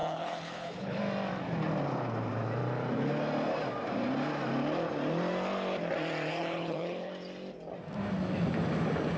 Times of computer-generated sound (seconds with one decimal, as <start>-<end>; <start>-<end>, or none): 0.0-1.0; 6.3-7.1